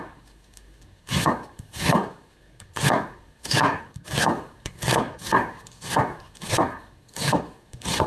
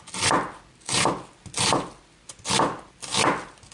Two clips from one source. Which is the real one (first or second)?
second